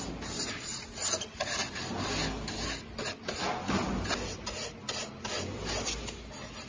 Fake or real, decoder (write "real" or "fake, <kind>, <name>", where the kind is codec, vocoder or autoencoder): real